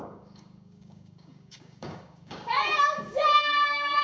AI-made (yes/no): yes